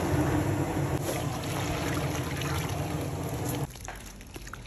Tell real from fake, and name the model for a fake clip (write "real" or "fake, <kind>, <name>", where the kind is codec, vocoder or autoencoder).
real